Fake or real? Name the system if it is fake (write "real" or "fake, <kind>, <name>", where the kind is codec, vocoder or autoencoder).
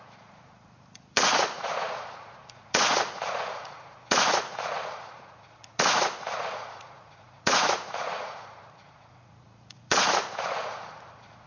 fake, vocoder, Vocos